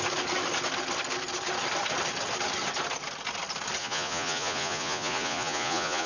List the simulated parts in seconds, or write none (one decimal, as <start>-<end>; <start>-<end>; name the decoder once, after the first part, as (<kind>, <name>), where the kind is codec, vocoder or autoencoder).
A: 3.8-6.1 (vocoder, Vocos)